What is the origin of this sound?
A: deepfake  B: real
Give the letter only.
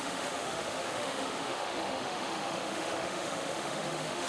A